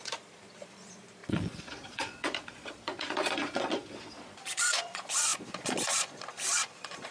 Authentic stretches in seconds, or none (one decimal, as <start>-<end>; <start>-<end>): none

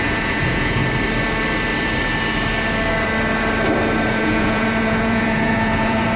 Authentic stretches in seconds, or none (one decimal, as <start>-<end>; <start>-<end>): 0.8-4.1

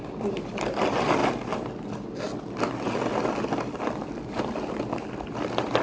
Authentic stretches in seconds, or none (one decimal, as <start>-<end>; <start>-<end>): 0.0-5.8

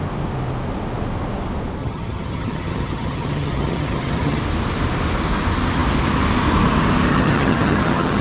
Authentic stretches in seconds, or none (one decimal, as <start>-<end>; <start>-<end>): 0.0-1.8; 4.4-7.1

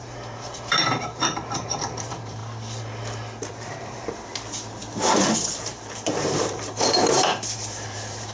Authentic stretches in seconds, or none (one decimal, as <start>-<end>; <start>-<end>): 2.4-3.5; 4.3-5.7

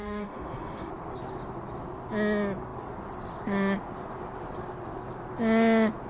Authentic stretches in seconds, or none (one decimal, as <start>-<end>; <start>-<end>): 0.9-6.1